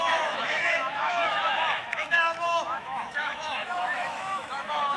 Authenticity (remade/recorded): remade